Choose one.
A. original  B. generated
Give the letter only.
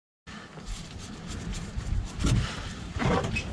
A